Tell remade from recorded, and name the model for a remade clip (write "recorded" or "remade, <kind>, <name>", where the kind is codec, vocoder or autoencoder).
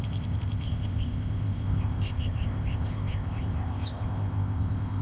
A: remade, codec, ZipCodec